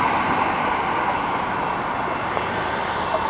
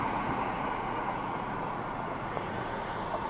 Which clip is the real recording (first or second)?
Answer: first